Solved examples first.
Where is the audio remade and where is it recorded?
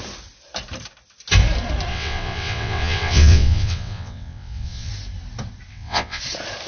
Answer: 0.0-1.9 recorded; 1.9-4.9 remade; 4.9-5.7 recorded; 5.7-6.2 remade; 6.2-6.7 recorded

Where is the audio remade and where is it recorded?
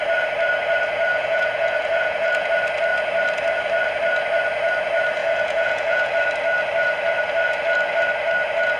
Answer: 0.0-1.1 recorded; 1.1-2.5 remade; 2.5-5.2 recorded; 5.2-6.1 remade; 6.1-8.8 recorded